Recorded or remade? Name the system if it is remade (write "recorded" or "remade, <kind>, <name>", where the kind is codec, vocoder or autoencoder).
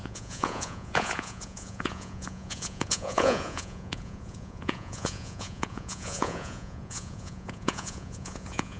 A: remade, vocoder, Vocos